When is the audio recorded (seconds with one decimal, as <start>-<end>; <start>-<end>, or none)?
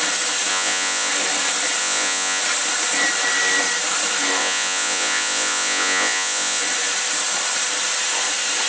0.0-0.5; 1.1-1.8; 2.4-4.4; 6.6-8.7